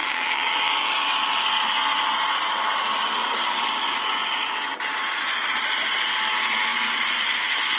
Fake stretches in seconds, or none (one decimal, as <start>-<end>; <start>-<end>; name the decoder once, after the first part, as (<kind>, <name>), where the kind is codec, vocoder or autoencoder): 0.0-0.7 (vocoder, WaveNeXt)